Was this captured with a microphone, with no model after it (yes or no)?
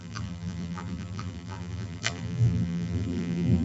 no